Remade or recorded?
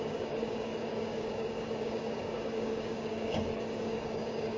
remade